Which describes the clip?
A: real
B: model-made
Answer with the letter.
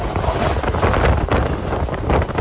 A